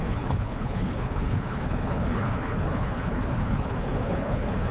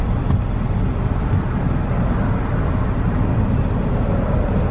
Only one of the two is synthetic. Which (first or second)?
first